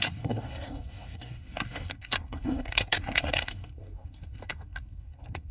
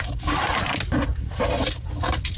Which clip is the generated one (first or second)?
first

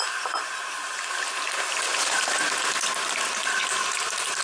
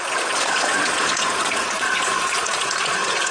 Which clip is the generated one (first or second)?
second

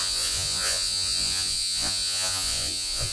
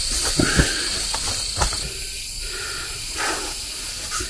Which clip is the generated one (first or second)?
first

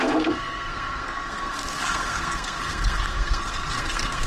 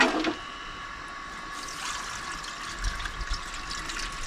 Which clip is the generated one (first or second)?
first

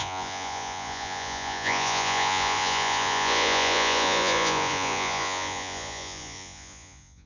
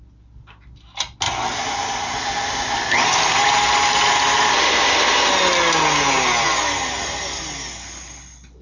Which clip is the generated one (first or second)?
first